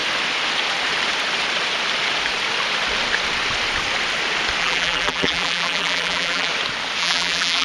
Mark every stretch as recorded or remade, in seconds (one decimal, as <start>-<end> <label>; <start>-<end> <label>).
0.0-4.6 recorded; 4.6-6.5 remade; 6.5-7.0 recorded; 7.0-7.6 remade